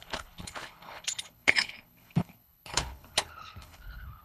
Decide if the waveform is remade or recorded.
remade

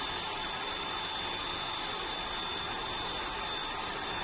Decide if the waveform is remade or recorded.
recorded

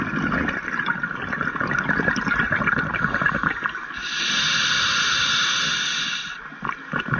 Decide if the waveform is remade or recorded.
recorded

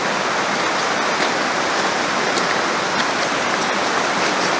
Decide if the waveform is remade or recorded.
recorded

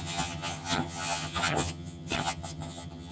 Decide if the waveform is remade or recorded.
remade